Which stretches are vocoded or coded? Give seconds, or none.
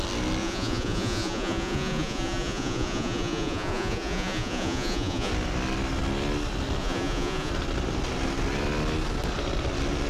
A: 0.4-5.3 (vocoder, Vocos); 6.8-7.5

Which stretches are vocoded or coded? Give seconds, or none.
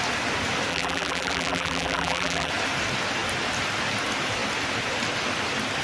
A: 0.7-2.5 (vocoder, BigVGAN v2)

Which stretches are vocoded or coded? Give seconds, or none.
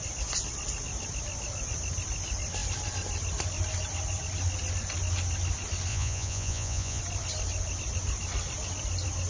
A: 5.9-7.0 (vocoder, Vocos)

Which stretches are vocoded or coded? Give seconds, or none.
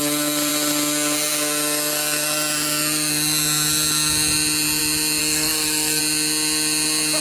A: 5.2-6.0 (codec, SNAC)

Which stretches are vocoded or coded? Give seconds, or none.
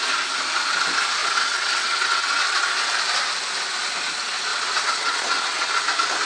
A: 1.2-2.4 (vocoder, WaveNeXt); 4.5-5.7